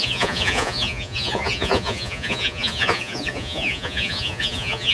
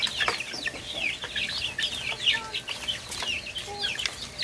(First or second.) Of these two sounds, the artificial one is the first